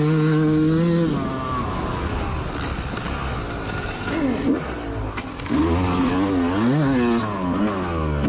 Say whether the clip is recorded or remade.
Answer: recorded